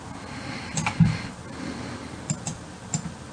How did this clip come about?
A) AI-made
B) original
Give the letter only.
B